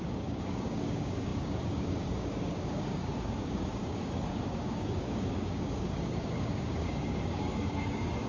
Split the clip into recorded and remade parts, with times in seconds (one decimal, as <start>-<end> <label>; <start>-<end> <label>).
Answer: 0.0-8.3 remade